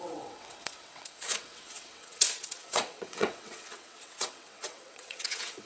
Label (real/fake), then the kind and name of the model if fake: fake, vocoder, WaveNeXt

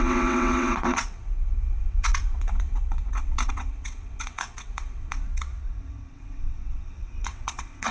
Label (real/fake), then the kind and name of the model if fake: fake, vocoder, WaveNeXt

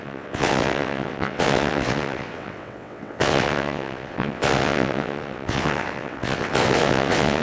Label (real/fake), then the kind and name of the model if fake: fake, vocoder, WaveNeXt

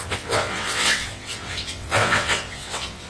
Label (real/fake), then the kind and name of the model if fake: fake, vocoder, WaveNeXt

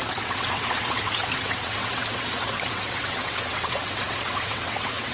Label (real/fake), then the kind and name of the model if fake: fake, vocoder, WaveNeXt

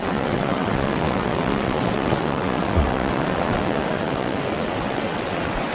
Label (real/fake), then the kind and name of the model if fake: fake, vocoder, WaveNeXt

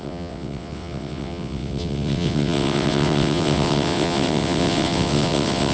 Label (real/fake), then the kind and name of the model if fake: fake, vocoder, WaveNeXt